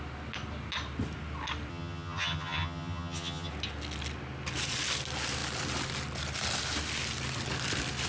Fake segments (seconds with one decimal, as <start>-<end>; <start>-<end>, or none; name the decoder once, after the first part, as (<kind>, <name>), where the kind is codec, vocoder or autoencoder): 1.7-3.5 (vocoder, HiFi-GAN)